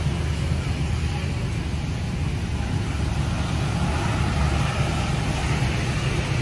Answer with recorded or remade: recorded